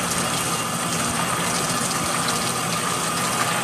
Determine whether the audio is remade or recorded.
recorded